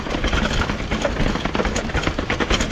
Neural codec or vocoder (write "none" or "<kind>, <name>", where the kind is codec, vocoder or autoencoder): none